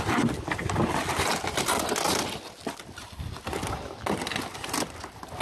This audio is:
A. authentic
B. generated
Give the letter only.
A